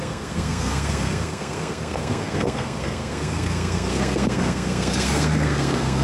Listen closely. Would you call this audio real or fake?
fake